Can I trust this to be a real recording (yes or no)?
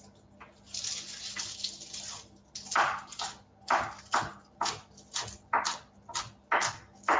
yes